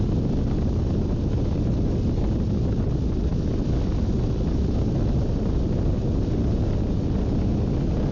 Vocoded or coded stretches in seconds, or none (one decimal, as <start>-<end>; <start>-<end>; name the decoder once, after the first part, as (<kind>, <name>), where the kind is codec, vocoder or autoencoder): none